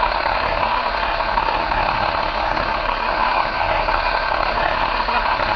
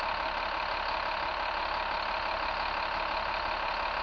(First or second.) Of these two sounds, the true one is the second